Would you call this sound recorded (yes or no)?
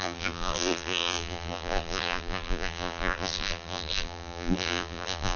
no